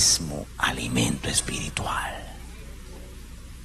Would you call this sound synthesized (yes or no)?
no